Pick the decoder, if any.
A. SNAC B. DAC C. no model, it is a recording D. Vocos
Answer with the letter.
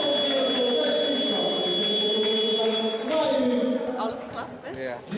C